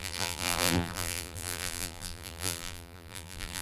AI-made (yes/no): yes